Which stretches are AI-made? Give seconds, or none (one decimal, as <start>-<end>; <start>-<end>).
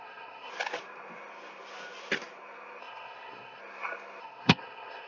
0.0-0.5; 2.8-3.6; 4.2-5.1